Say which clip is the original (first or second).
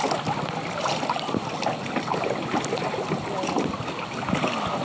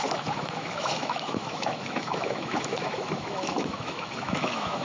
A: first